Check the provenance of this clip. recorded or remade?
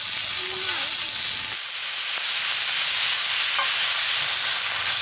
recorded